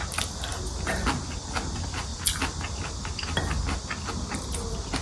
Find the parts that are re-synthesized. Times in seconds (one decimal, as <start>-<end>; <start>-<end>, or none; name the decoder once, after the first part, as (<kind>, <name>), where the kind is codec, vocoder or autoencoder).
none

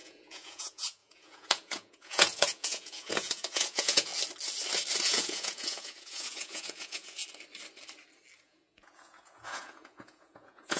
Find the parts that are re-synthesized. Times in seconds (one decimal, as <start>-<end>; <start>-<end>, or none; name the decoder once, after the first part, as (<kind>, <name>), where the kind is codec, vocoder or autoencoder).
0.0-4.1 (vocoder, Vocos); 5.0-7.2; 8.4-10.8

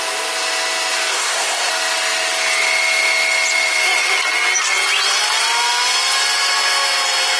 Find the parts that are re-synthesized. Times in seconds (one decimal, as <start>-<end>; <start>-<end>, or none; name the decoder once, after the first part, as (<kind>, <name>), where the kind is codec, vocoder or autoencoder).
1.1-1.7 (codec, SNAC)

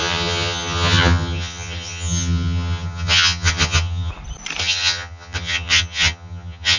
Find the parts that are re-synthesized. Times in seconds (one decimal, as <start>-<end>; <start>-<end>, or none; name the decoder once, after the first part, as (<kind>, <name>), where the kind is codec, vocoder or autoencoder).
0.0-4.1 (vocoder, HiFi-GAN); 4.6-6.8

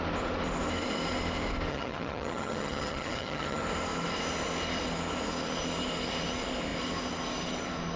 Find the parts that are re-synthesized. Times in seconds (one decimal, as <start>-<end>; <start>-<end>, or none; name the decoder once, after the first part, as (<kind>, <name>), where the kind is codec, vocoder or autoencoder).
1.7-3.6 (vocoder, HiFi-GAN)

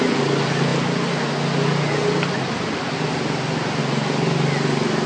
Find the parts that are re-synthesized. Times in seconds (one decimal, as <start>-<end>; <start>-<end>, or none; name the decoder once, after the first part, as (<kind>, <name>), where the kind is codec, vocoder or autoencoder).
none

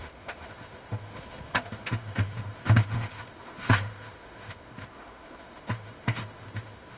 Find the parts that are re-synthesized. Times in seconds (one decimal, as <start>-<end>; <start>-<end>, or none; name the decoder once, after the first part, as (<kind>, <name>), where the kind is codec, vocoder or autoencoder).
0.0-7.0 (autoencoder, DAC-VAE)